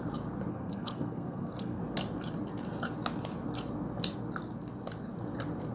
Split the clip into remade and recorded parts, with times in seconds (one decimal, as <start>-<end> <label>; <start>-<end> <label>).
0.0-0.5 recorded; 0.5-1.8 remade; 1.8-5.7 recorded